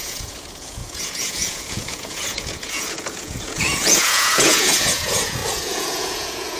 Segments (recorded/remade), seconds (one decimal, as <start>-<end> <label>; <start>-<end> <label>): 0.0-6.6 remade